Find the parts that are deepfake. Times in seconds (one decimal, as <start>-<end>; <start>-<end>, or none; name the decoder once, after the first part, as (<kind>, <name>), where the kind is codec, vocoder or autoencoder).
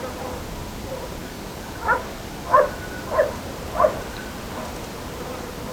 1.2-2.6 (codec, DAC)